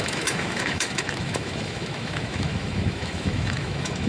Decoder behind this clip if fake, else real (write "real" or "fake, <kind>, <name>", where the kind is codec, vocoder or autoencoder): fake, autoencoder, DAC-VAE